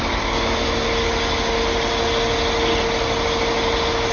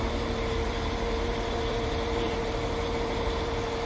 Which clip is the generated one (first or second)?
second